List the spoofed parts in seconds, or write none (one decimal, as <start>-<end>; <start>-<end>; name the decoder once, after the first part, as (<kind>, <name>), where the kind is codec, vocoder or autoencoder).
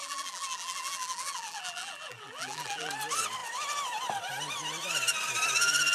0.0-2.9 (vocoder, BigVGAN v2)